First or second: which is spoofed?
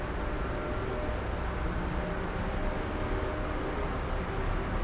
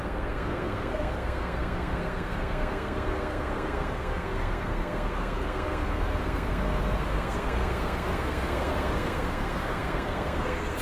second